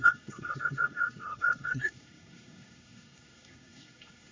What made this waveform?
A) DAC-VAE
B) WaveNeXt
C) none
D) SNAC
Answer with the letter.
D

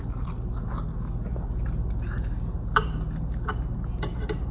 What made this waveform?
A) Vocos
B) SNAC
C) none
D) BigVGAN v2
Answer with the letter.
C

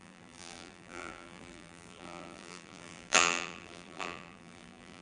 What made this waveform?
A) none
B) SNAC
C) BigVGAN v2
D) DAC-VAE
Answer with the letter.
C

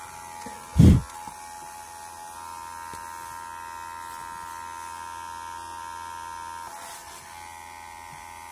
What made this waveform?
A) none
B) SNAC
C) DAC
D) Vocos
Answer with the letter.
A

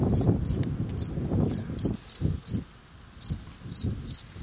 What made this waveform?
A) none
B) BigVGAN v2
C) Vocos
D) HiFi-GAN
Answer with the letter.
A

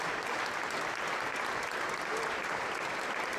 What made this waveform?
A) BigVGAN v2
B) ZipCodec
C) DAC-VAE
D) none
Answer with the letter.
D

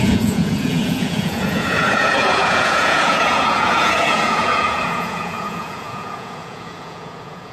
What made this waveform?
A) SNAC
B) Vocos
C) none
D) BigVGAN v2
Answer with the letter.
B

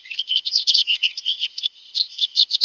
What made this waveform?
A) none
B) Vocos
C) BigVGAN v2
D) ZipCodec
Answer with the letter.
D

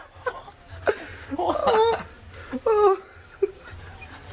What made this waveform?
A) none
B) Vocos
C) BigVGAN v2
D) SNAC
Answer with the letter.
A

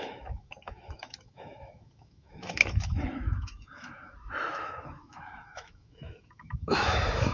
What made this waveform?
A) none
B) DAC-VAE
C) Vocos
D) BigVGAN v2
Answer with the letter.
B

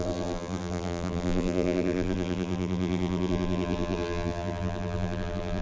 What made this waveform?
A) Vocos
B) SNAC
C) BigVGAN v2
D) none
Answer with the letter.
C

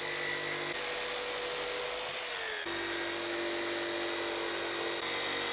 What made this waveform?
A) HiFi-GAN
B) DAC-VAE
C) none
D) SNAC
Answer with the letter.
C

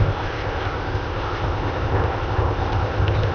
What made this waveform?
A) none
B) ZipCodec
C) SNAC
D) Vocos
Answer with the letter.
B